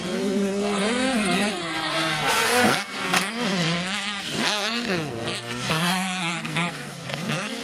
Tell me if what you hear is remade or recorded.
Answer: remade